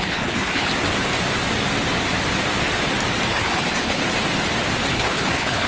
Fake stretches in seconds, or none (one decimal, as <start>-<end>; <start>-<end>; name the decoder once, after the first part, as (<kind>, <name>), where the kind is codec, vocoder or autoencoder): 0.0-0.7 (codec, HILCodec); 3.3-4.0; 4.9-5.7